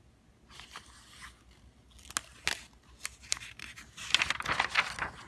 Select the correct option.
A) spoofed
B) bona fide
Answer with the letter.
B